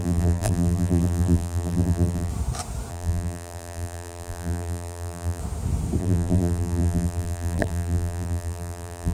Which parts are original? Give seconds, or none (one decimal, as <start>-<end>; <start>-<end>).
2.3-2.9; 5.4-6.0